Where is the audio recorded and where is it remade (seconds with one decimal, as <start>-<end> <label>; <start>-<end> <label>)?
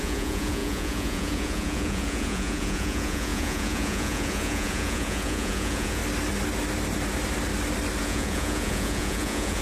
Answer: 0.0-6.0 remade; 6.0-8.0 recorded; 8.0-9.6 remade